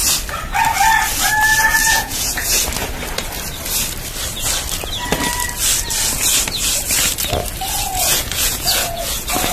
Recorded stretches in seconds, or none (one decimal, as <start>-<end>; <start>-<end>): 0.0-1.8; 2.5-7.9; 9.1-9.5

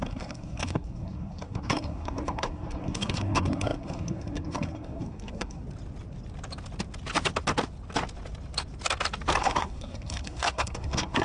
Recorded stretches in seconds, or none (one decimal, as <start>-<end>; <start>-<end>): 5.6-9.4

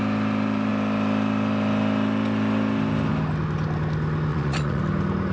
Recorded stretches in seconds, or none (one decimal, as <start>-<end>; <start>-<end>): 0.0-4.3; 4.8-5.3

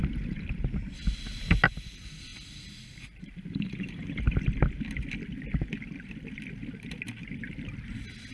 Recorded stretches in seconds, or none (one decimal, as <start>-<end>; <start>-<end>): 0.0-8.3